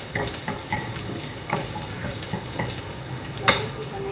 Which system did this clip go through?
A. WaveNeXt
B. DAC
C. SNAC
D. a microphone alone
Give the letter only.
B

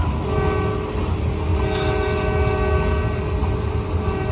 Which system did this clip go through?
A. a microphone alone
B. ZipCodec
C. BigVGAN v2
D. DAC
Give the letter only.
A